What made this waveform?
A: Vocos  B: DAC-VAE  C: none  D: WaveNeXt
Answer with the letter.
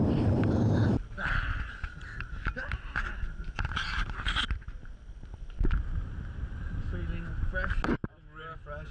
C